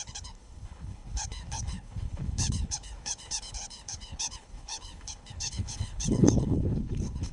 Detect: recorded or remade remade